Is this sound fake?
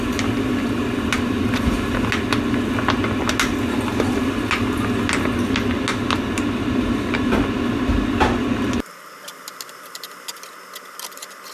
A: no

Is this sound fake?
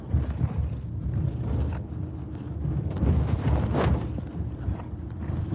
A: no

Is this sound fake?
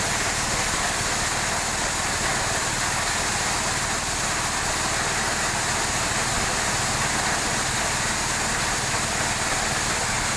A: no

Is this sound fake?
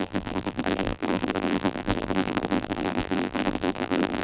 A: yes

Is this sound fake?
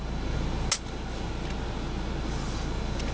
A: no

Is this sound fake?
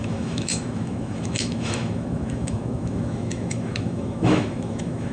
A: yes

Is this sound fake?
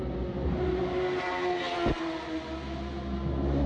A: no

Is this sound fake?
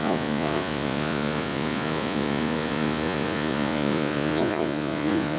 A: yes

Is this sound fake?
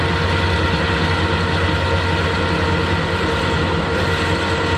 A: no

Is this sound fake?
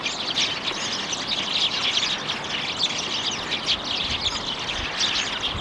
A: no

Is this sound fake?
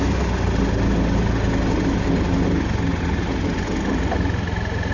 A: no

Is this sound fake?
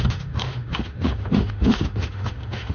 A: yes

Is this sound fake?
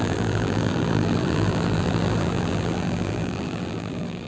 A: yes